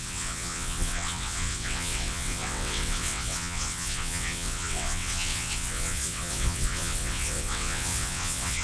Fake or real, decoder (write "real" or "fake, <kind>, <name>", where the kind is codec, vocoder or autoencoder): fake, vocoder, WaveNeXt